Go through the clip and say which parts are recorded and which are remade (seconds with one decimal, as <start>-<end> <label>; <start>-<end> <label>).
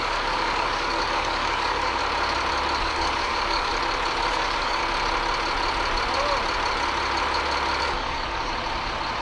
0.0-2.0 remade; 2.0-2.8 recorded; 2.8-3.7 remade; 3.7-4.3 recorded; 4.3-4.8 remade; 4.8-7.8 recorded; 7.8-8.5 remade; 8.5-9.2 recorded